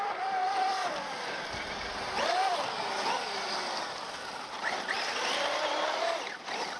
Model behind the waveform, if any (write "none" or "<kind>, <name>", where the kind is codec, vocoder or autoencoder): none